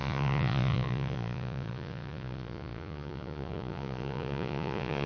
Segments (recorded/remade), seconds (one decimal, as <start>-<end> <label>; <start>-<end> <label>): 0.0-5.1 remade